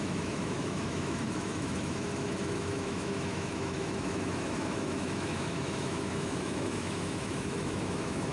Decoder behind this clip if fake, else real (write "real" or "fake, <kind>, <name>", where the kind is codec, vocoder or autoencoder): fake, autoencoder, DAC-VAE